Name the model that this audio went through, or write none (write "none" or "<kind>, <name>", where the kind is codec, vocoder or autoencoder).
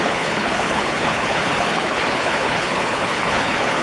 codec, HILCodec